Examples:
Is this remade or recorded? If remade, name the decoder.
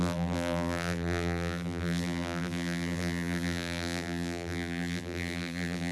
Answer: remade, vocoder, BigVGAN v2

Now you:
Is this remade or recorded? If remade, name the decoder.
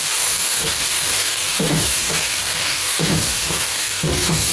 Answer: remade, codec, DAC